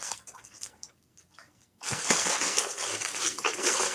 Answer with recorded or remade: remade